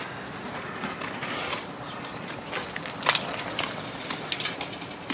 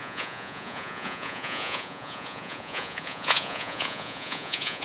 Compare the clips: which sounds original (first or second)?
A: first